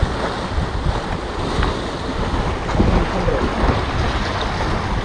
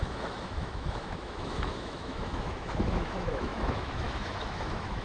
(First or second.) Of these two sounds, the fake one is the second